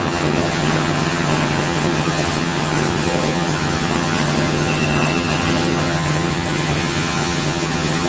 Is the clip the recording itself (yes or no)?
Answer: no